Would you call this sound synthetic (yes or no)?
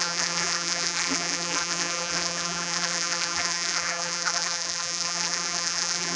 yes